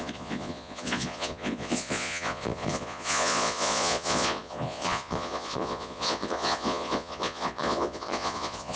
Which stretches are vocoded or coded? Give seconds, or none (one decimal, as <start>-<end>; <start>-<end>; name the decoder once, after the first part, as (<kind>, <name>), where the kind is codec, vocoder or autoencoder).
0.0-8.8 (vocoder, Vocos)